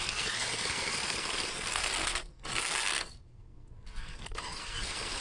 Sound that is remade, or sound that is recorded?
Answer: remade